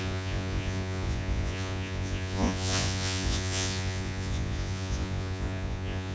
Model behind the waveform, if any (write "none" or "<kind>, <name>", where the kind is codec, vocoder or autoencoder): vocoder, Vocos